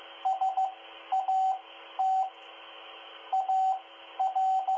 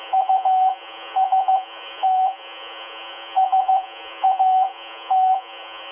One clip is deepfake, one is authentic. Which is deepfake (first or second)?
second